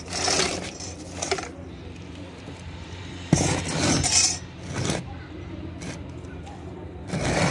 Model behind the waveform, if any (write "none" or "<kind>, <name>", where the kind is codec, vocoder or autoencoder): vocoder, BigVGAN v2